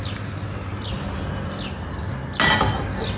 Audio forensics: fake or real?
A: real